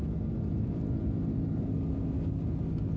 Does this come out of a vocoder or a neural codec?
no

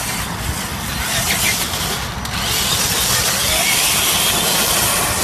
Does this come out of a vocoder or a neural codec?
no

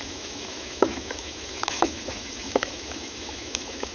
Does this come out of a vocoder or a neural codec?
yes